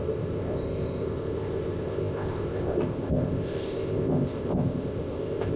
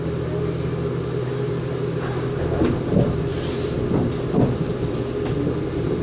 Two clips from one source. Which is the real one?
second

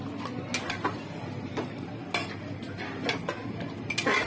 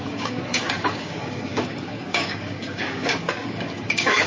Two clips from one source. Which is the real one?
first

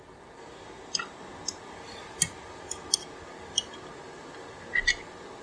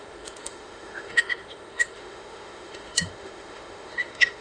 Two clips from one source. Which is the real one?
first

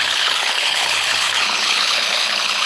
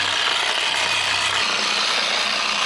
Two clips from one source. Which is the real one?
second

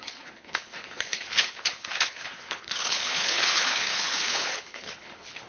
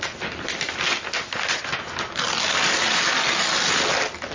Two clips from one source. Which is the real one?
second